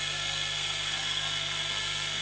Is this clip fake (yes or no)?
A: yes